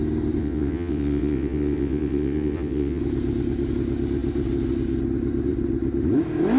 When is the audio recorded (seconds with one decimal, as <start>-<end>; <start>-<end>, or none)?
0.0-0.4; 3.0-6.6